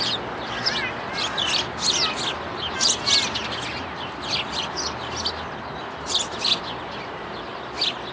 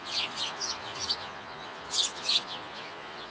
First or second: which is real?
first